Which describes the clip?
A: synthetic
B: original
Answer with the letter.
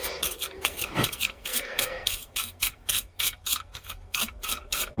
A